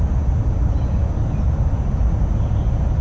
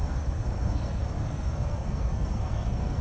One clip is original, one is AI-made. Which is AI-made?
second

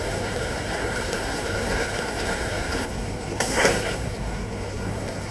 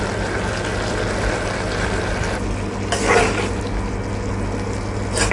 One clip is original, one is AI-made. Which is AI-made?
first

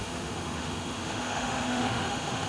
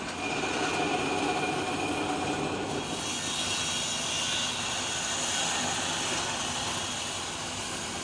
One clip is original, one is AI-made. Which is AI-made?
first